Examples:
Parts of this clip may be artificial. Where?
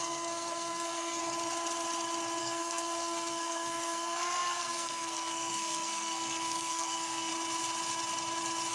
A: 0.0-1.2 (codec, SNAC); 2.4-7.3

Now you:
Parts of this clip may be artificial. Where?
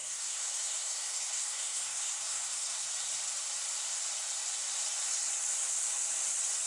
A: 0.0-2.9 (codec, SNAC)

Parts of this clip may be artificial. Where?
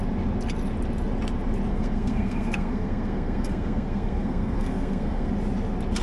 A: 1.7-5.3 (codec, SNAC)